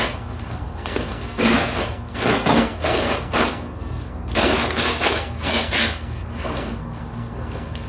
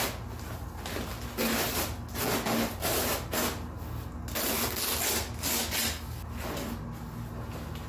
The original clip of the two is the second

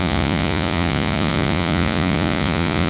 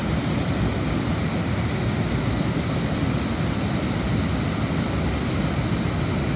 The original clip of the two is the second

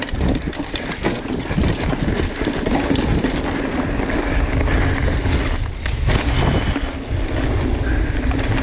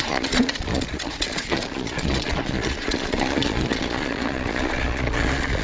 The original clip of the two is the first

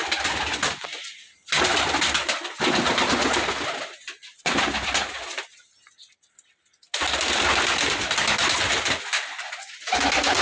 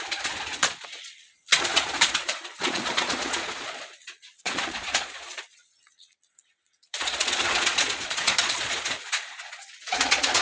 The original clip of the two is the first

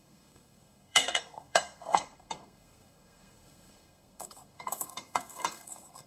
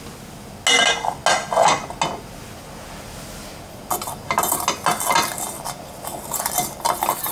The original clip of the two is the second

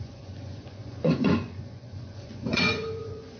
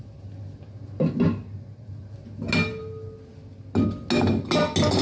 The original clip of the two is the second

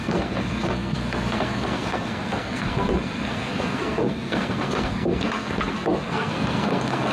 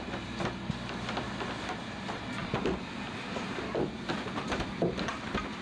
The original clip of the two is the second